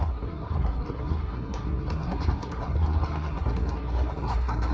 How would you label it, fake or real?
fake